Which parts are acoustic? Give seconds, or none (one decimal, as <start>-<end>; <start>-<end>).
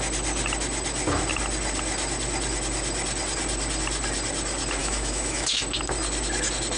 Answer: 0.0-4.8; 5.6-6.8